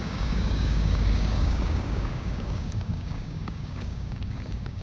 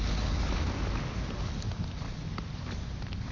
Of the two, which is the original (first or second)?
second